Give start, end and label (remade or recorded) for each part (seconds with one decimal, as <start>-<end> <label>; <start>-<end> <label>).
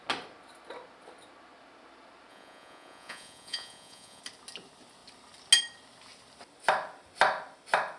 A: 0.0-2.3 recorded; 2.3-4.2 remade; 4.2-8.0 recorded